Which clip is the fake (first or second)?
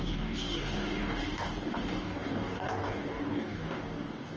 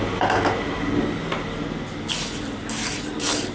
first